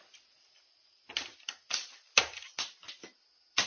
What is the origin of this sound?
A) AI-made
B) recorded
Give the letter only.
B